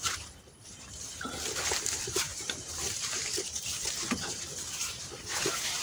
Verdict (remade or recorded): remade